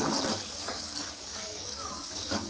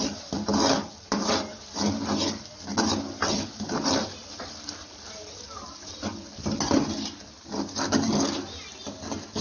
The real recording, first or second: second